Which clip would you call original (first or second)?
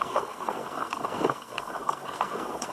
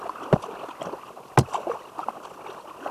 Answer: second